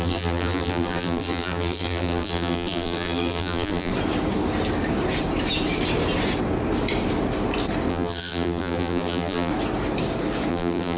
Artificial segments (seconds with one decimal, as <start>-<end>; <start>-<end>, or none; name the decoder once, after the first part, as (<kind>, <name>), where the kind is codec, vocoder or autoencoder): 0.0-3.9 (vocoder, BigVGAN v2); 7.9-9.5; 10.5-11.0